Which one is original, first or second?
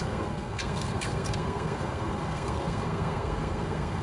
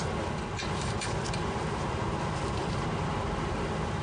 second